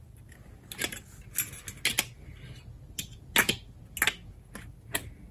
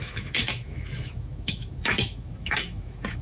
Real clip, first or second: first